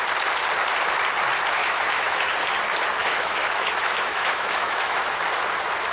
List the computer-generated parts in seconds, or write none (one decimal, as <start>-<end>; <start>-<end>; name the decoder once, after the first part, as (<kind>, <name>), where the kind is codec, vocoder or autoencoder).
1.6-2.3 (autoencoder, DAC-VAE); 3.0-5.0